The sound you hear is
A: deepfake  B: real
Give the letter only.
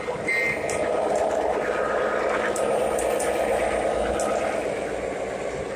B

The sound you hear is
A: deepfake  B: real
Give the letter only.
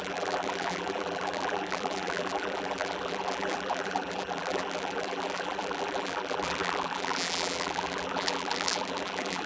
A